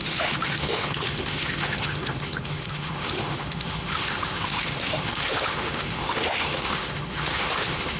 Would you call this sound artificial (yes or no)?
yes